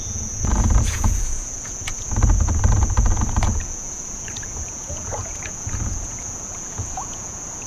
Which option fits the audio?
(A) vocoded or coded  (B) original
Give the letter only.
A